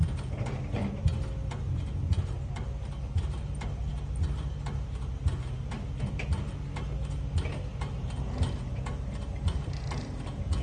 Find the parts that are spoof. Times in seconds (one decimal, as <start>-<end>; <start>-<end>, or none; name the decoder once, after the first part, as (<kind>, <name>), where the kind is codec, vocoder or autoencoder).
none